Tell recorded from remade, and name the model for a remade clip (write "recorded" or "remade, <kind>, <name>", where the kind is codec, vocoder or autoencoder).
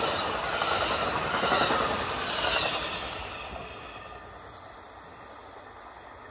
recorded